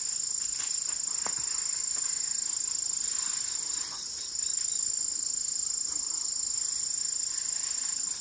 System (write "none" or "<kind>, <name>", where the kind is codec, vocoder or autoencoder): none